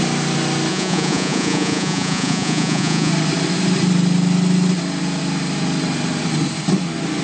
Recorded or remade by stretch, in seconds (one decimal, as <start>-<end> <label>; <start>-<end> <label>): 0.0-0.7 recorded; 0.7-3.1 remade; 3.1-7.2 recorded